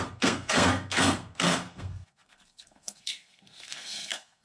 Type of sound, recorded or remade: remade